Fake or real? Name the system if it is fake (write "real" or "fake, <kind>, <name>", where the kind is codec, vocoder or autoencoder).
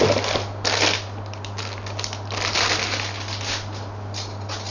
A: real